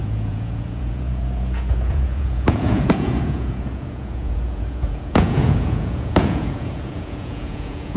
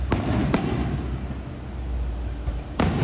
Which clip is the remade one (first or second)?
first